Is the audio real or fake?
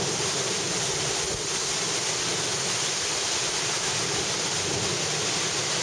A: real